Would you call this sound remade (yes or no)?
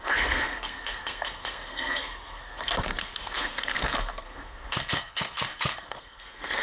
yes